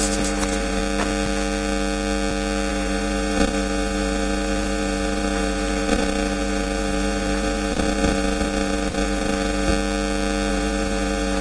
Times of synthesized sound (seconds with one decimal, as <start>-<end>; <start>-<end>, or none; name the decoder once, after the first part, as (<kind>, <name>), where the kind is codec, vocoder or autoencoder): 0.0-0.8 (vocoder, BigVGAN v2); 2.7-9.7; 10.5-11.4